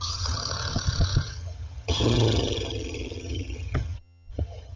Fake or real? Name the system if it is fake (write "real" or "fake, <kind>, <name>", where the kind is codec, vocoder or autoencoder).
fake, vocoder, HiFi-GAN